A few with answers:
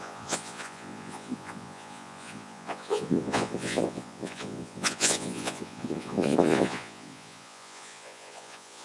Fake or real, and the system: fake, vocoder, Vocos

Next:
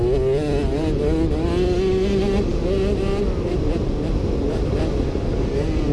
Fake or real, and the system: real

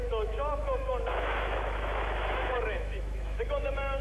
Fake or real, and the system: fake, autoencoder, DAC-VAE